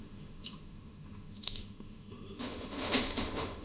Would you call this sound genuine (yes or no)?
no